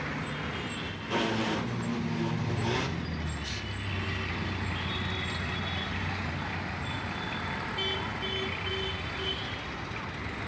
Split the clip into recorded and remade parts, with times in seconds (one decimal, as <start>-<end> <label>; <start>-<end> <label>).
0.0-10.5 recorded